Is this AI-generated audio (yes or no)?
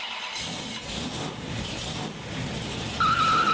no